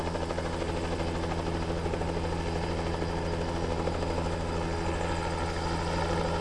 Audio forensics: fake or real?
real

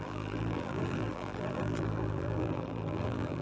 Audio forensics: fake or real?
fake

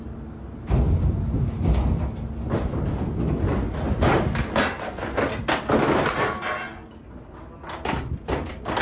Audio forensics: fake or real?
real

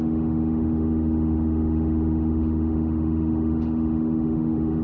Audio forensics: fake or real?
fake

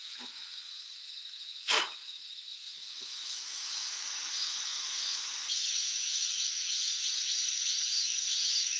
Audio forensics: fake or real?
fake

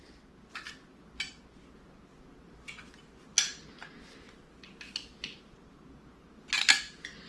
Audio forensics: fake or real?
real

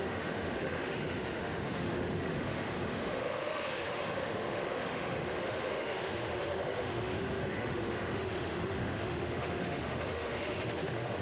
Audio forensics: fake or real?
fake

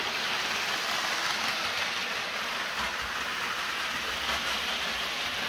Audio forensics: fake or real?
real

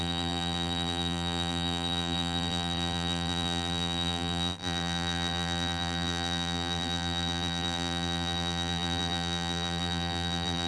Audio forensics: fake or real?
fake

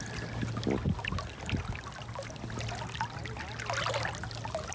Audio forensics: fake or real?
real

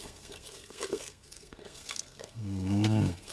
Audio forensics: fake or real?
fake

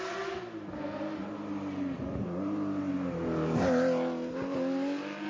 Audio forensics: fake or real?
real